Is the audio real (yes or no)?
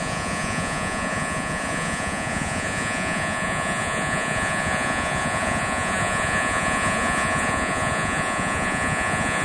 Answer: no